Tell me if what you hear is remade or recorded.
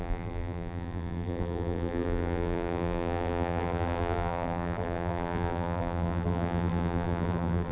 remade